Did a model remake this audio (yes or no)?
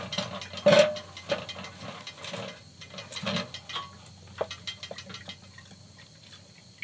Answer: no